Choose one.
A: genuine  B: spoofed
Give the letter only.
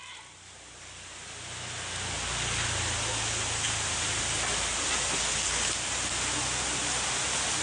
A